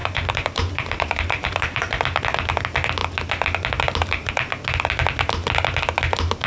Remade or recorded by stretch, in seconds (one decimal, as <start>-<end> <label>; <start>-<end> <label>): 0.0-2.0 remade; 2.0-6.5 recorded